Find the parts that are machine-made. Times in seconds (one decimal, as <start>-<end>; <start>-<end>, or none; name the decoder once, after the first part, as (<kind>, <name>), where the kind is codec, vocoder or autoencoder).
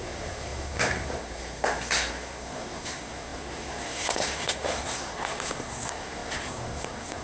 0.0-7.2 (codec, SNAC)